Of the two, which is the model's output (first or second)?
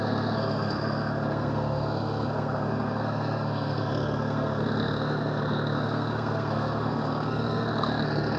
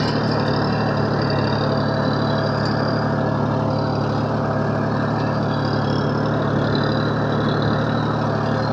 first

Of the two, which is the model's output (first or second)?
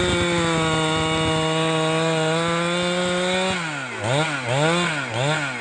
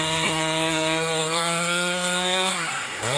second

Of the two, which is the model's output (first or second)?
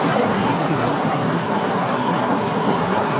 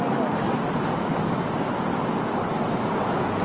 first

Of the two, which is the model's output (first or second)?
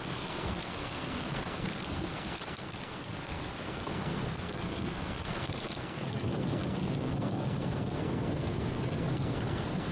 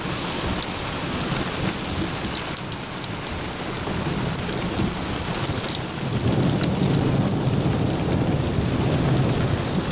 first